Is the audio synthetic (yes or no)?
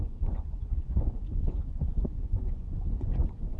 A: yes